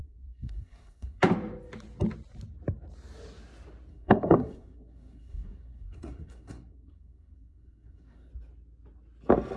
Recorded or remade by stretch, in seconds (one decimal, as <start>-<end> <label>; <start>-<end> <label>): 0.0-1.2 remade; 1.2-3.9 recorded; 3.9-8.3 remade; 8.3-9.6 recorded